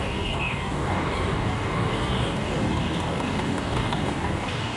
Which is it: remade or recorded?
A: remade